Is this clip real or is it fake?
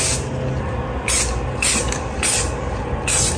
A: real